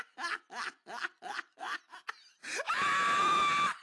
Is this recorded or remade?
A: recorded